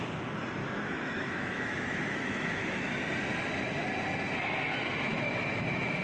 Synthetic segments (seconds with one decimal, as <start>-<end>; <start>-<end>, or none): 0.6-2.9; 5.1-6.0